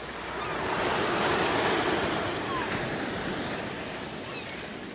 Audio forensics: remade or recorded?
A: recorded